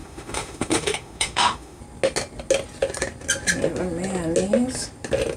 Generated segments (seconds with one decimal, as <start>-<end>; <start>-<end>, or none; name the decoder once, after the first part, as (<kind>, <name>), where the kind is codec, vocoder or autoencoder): 0.0-1.8 (autoencoder, DAC-VAE)

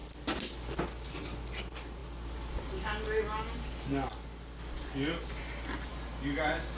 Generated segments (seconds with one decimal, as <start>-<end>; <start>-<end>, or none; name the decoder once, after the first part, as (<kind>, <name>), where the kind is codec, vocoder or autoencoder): none

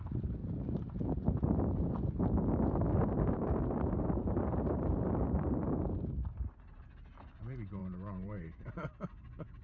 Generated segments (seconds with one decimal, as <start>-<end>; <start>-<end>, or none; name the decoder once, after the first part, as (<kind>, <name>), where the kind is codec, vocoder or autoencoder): 0.4-1.6 (vocoder, BigVGAN v2); 3.0-6.3; 7.8-8.7

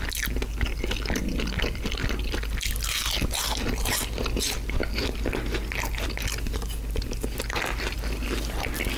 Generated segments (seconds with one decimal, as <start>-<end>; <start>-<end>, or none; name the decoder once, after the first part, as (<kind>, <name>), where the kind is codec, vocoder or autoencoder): none

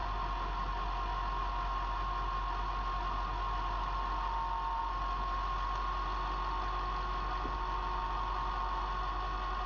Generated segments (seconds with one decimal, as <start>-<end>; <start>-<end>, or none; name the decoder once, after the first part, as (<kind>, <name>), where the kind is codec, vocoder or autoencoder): none